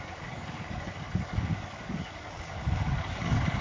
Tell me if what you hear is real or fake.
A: fake